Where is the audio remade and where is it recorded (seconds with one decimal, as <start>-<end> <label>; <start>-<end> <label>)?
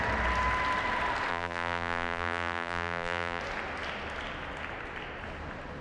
0.0-1.3 recorded; 1.3-3.4 remade; 3.4-5.8 recorded